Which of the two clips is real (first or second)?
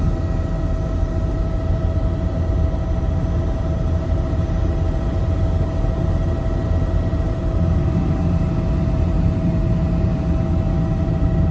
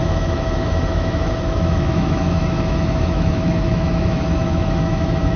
first